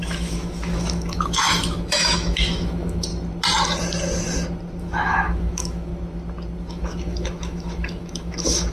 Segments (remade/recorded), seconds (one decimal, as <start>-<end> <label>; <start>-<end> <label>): 0.0-3.1 remade; 3.1-4.8 recorded; 4.8-5.9 remade; 5.9-6.6 recorded; 6.6-8.7 remade